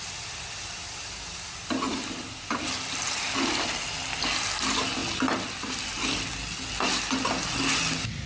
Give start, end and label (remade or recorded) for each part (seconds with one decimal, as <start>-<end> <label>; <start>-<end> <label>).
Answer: 0.0-8.3 recorded